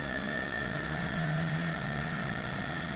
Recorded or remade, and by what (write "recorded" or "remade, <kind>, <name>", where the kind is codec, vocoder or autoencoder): remade, vocoder, Vocos